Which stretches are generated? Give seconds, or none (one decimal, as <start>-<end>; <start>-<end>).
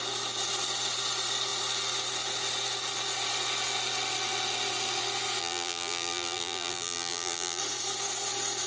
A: 5.4-7.6